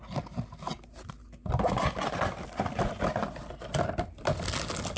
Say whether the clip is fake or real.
real